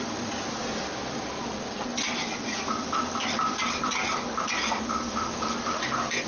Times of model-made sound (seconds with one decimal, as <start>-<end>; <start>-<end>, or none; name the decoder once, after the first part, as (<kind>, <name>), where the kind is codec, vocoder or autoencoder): none